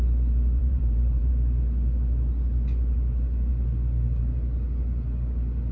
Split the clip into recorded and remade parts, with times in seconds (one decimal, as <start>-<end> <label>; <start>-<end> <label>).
0.0-0.6 recorded; 0.6-1.3 remade; 1.3-5.7 recorded